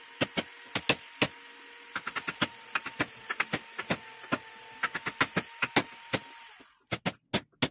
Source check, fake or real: real